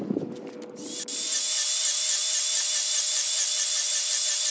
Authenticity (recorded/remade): recorded